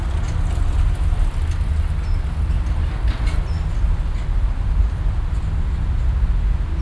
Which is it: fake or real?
real